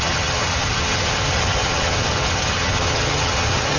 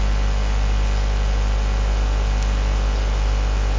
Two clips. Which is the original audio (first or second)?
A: second